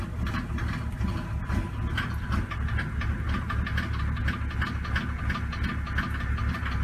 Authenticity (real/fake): real